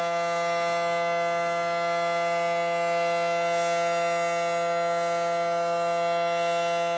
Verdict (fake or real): real